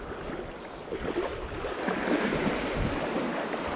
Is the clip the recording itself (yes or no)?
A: yes